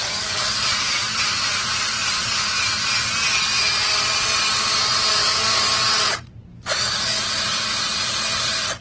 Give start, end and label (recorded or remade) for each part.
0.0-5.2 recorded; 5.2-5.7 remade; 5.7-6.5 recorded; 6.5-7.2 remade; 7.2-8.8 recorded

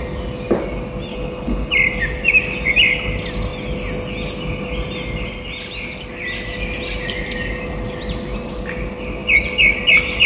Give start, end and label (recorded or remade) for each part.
0.0-1.1 recorded; 1.1-1.7 remade; 1.7-10.3 recorded

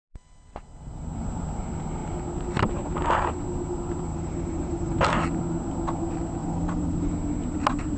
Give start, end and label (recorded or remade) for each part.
0.0-4.1 recorded; 4.1-4.9 remade; 4.9-6.4 recorded; 6.4-7.1 remade; 7.1-8.0 recorded

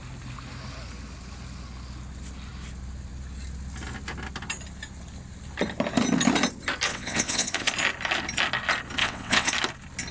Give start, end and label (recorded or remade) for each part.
0.0-6.9 recorded; 6.9-7.7 remade; 7.7-9.0 recorded; 9.0-9.5 remade; 9.5-10.1 recorded

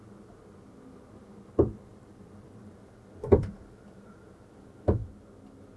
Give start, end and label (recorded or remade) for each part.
0.0-1.9 recorded; 1.9-4.5 remade; 4.5-5.0 recorded; 5.0-5.8 remade